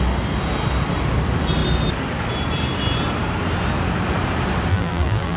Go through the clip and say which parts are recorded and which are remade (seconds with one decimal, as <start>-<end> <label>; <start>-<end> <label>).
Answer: 0.0-4.7 recorded; 4.7-5.4 remade